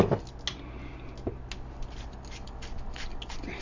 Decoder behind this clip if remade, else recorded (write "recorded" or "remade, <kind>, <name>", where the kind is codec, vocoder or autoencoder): recorded